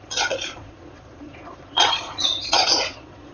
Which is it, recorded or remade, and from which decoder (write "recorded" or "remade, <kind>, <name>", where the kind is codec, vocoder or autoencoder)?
remade, vocoder, Vocos